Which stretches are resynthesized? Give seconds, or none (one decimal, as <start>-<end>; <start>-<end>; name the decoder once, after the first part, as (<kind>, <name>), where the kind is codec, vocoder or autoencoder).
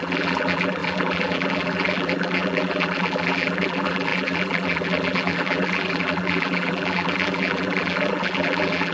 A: 0.0-8.9 (vocoder, BigVGAN v2)